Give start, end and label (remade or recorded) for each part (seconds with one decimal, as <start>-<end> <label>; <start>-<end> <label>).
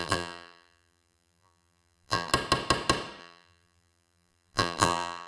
0.0-2.3 remade; 2.3-3.2 recorded; 3.2-5.3 remade